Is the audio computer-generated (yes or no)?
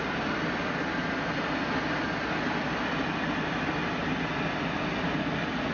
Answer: no